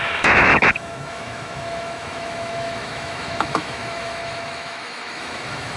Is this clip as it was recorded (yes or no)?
no